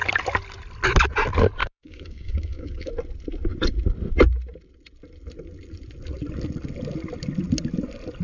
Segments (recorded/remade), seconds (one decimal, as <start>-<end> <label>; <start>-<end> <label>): 0.0-1.6 recorded; 1.6-2.9 remade; 2.9-8.2 recorded